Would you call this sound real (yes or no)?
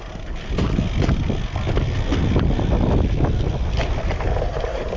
yes